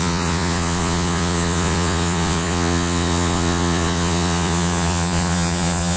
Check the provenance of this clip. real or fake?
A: fake